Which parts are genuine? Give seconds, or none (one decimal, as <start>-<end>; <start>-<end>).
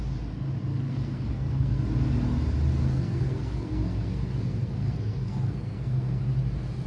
0.0-0.7; 1.8-2.7; 6.2-6.9